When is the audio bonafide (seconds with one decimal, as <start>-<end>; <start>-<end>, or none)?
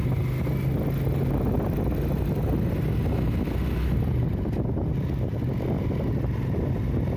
0.0-7.2